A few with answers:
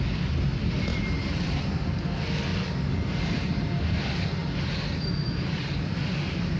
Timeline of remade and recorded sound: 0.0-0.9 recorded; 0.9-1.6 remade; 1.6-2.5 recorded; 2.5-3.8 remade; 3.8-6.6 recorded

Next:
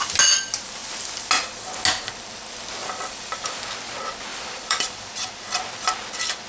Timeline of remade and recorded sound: 0.0-2.8 recorded; 2.8-3.6 remade; 3.6-4.3 recorded; 4.3-5.1 remade; 5.1-6.5 recorded

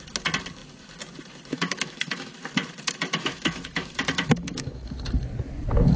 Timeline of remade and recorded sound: 0.0-1.5 recorded; 1.5-2.3 remade; 2.3-3.1 recorded; 3.1-4.9 remade; 4.9-6.0 recorded

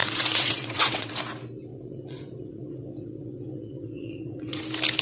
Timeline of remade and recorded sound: 0.0-1.1 remade; 1.1-1.7 recorded; 1.7-4.6 remade; 4.6-5.0 recorded

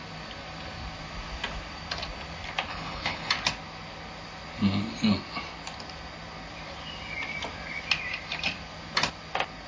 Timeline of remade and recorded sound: 0.0-2.7 recorded; 2.7-3.3 remade; 3.3-9.7 recorded

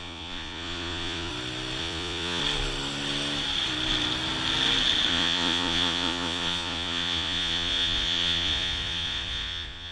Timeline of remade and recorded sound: 0.0-1.3 remade; 1.3-1.8 recorded; 1.8-2.4 remade; 2.4-5.1 recorded; 5.1-9.9 remade

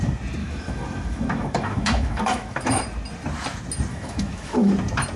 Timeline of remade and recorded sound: 0.0-0.4 recorded; 0.4-2.8 remade; 2.8-3.9 recorded; 3.9-4.7 remade; 4.7-5.2 recorded